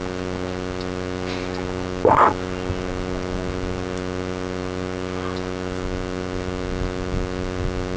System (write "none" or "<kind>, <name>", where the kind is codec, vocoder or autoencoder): none